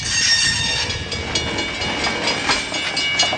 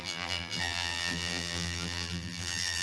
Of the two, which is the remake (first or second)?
second